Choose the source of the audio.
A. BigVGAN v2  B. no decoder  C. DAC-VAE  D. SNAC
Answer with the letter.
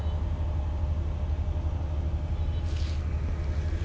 B